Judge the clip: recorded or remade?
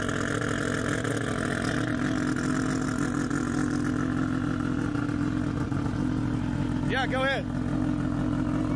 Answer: recorded